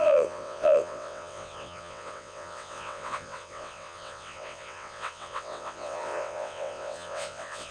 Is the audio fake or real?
fake